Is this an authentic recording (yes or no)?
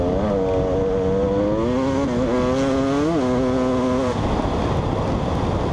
yes